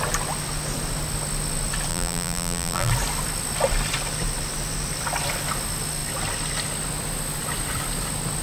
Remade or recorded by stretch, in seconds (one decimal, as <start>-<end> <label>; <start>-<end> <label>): 0.0-1.9 recorded; 1.9-2.9 remade; 2.9-8.4 recorded